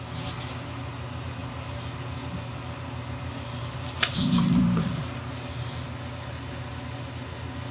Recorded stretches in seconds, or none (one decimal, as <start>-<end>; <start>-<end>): 0.0-7.7

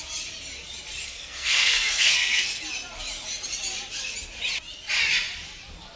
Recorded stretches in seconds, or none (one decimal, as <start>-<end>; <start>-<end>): 0.0-1.0; 2.6-6.0

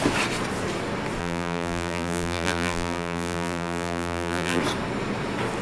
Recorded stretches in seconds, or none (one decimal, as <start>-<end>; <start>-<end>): 0.0-1.2; 4.6-5.6

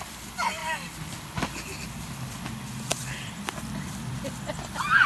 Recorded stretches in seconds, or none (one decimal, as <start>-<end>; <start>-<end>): 0.0-0.6; 1.8-2.9; 4.6-5.1